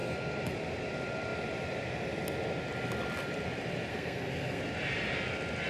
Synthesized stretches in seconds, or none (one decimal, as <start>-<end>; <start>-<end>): 3.9-4.6